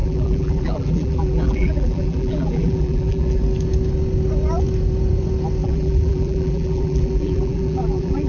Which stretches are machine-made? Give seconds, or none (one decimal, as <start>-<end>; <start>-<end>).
0.0-3.4; 5.6-8.3